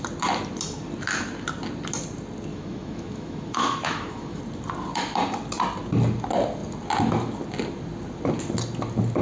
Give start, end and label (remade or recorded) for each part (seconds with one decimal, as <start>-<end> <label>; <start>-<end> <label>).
0.0-2.5 recorded; 2.5-4.4 remade; 4.4-9.2 recorded